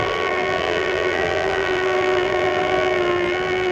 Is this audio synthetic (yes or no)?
yes